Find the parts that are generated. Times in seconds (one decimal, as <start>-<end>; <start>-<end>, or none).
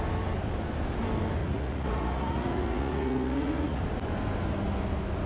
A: 1.4-3.8